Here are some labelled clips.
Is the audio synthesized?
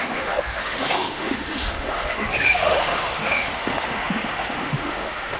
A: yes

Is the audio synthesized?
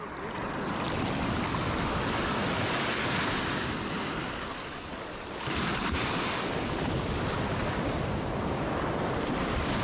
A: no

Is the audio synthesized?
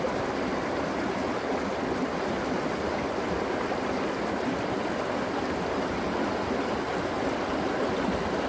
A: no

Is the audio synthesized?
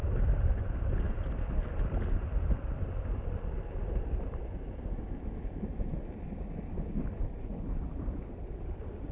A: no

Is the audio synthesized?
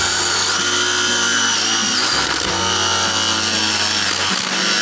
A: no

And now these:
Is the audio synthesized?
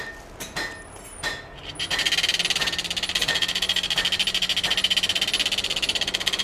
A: no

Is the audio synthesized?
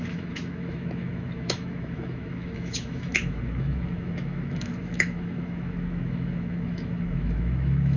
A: yes